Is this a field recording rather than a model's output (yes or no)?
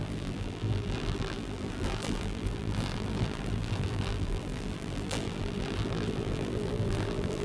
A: no